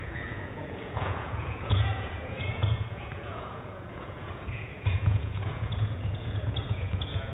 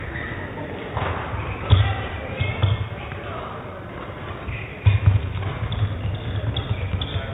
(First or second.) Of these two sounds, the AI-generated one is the first